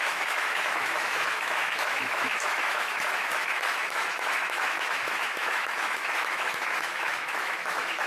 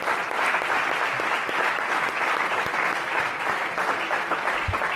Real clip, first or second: second